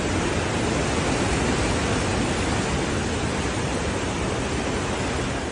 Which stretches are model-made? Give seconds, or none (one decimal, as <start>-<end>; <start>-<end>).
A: none